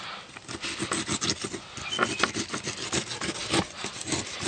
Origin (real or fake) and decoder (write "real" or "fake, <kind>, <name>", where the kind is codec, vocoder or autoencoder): real